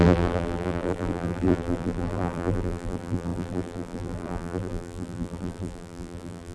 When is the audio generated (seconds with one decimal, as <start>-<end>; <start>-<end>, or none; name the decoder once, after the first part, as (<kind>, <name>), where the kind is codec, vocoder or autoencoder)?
0.0-6.5 (vocoder, BigVGAN v2)